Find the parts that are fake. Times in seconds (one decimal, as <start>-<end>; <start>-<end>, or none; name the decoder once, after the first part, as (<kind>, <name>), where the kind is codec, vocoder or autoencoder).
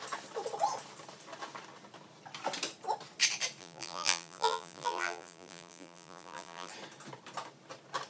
3.6-6.7 (vocoder, BigVGAN v2)